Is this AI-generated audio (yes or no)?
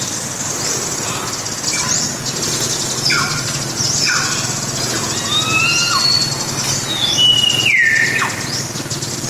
no